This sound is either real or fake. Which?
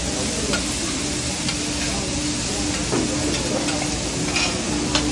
real